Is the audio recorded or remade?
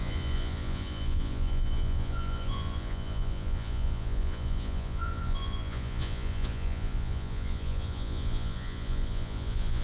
remade